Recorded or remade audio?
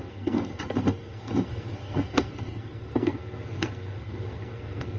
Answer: remade